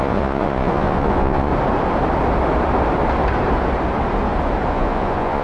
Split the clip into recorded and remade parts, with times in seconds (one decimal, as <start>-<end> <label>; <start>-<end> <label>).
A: 0.0-1.5 remade; 1.5-4.7 recorded; 4.7-5.4 remade